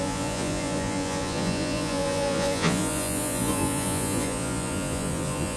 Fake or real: fake